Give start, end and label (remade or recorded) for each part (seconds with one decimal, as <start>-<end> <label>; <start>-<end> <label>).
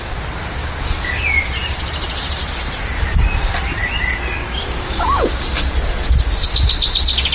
0.0-0.6 recorded; 0.6-1.2 remade; 1.2-4.4 recorded; 4.4-5.4 remade; 5.4-7.3 recorded